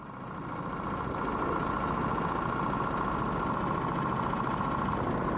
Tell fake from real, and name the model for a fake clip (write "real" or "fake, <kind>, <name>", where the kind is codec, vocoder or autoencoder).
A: real